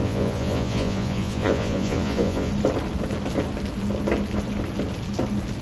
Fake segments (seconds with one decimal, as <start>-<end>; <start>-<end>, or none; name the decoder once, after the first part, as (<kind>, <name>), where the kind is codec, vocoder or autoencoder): 0.0-2.5 (vocoder, Vocos)

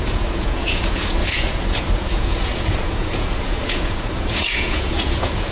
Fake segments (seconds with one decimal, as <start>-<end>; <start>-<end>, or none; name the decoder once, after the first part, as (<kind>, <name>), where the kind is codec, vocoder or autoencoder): 0.0-5.5 (vocoder, Vocos)

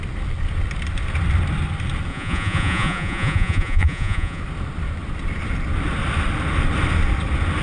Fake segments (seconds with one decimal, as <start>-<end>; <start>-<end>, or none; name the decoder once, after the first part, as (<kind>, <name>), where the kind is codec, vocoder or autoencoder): 2.1-4.4 (vocoder, Vocos)

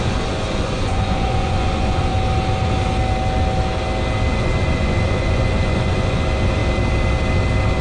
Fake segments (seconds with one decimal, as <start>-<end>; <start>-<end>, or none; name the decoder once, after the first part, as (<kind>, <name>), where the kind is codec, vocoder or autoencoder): 0.0-2.1 (vocoder, Vocos); 4.3-6.6

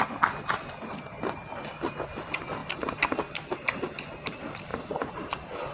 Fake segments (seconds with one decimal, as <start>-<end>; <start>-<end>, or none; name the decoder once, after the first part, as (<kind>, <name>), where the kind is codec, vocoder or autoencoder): 4.7-5.3 (vocoder, Vocos)

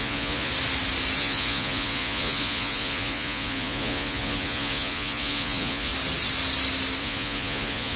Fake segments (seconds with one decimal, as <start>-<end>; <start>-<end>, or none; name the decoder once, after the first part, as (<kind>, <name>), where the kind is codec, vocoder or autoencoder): 0.0-0.5 (vocoder, Vocos); 1.2-5.9; 7.0-8.0